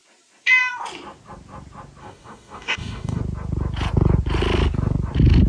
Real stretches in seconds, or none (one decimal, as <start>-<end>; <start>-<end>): 0.0-2.0; 3.2-5.5